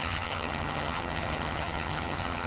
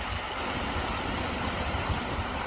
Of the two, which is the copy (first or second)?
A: first